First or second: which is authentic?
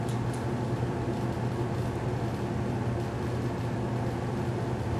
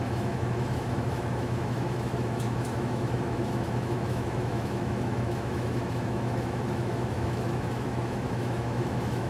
first